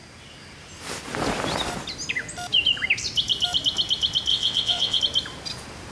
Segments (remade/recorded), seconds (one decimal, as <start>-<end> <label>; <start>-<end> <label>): 0.0-4.3 recorded; 4.3-5.0 remade; 5.0-5.9 recorded